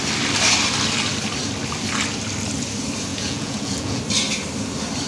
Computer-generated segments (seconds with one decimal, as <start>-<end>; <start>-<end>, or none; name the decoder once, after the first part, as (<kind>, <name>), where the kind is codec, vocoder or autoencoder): 3.1-4.0 (vocoder, Vocos)